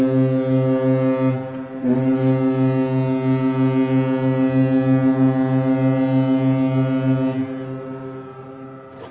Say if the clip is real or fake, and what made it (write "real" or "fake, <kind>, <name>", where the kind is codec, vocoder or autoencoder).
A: real